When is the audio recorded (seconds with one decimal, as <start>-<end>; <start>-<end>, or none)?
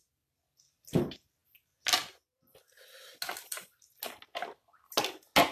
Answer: 0.0-5.5